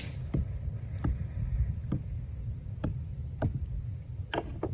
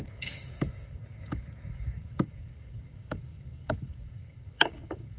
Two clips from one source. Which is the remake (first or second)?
second